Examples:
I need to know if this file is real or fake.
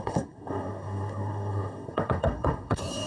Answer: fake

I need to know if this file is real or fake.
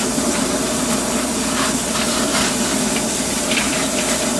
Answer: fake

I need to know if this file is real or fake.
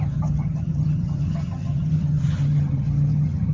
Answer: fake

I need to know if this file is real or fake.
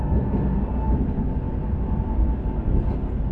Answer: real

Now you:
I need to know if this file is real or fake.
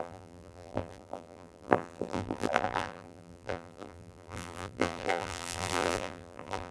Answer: fake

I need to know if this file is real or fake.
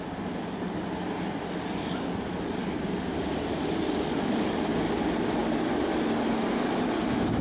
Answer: real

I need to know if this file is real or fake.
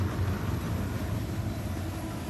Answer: real